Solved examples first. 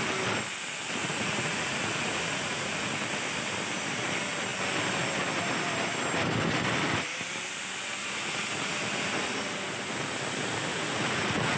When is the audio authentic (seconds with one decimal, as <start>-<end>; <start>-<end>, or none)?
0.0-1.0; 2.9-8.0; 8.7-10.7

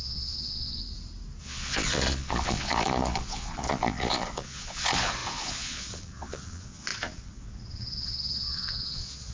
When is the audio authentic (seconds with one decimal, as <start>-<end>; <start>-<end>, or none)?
0.8-1.4

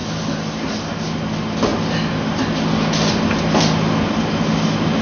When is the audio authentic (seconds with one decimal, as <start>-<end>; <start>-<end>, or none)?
0.0-5.0

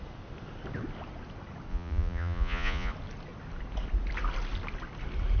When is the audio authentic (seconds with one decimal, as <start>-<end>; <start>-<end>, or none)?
0.0-1.7; 2.9-5.4

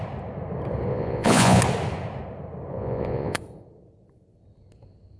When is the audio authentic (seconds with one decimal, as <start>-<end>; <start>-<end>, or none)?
0.0-0.9; 1.6-2.7; 3.4-5.2

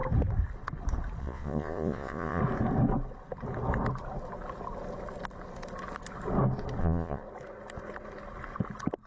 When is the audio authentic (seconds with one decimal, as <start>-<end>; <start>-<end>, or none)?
0.0-1.2; 2.4-6.8; 7.2-9.1

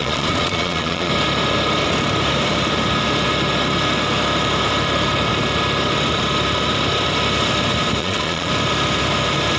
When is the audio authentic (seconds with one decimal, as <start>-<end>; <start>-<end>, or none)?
1.1-8.0; 8.5-9.6

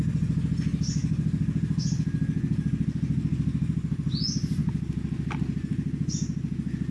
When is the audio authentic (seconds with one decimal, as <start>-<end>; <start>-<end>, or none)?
0.0-6.9